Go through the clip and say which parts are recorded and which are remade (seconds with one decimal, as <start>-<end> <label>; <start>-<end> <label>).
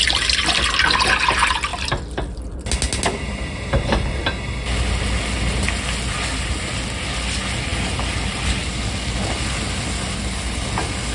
0.0-11.1 recorded